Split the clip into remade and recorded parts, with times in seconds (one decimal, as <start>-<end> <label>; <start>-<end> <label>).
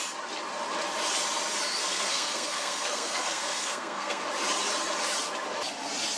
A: 0.0-1.8 recorded; 1.8-4.2 remade; 4.2-6.2 recorded